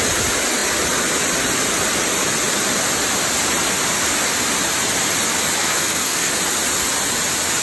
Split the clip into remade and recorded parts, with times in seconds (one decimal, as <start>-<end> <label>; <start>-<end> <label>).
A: 0.0-5.6 recorded; 5.6-6.4 remade; 6.4-7.6 recorded